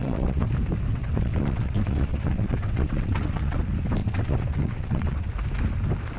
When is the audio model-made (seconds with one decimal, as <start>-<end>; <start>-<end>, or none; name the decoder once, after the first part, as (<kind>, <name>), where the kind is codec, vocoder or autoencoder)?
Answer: 0.0-0.5 (vocoder, WaveNeXt); 0.9-3.6; 4.0-5.2